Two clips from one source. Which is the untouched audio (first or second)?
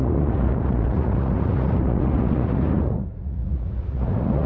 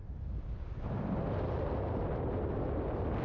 second